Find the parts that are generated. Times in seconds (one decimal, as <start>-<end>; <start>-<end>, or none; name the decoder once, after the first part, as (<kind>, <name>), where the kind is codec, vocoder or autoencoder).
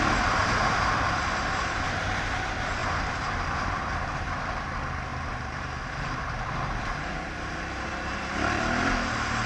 0.4-2.0 (vocoder, BigVGAN v2); 2.8-4.4; 5.1-8.6